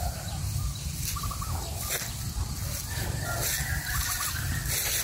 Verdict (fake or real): real